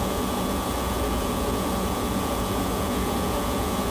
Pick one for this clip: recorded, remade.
remade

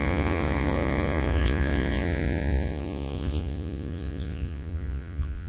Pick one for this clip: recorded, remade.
remade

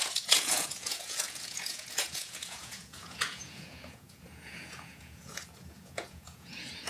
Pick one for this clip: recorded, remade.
remade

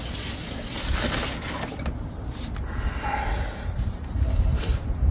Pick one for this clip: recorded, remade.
recorded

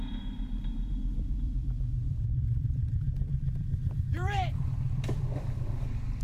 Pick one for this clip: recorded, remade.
remade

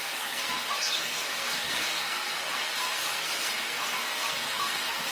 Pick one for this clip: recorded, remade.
remade